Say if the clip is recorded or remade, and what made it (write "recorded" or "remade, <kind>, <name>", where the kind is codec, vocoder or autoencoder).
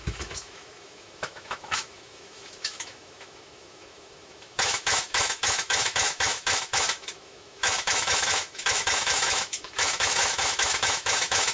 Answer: remade, autoencoder, DAC-VAE